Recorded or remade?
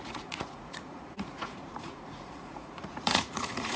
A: remade